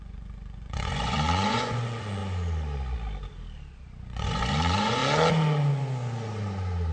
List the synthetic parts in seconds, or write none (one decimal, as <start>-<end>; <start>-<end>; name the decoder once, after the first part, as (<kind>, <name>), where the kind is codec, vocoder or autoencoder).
0.0-2.2 (vocoder, Vocos); 4.0-5.0